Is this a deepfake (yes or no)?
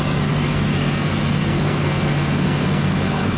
yes